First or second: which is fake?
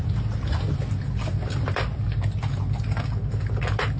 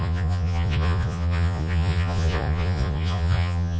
second